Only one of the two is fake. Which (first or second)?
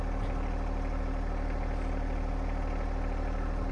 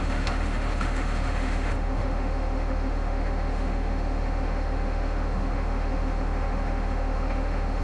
second